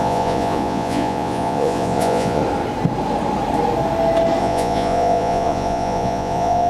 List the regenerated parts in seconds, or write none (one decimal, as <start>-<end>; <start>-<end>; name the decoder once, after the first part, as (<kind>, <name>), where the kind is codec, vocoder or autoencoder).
0.0-2.4 (vocoder, Vocos); 4.4-6.7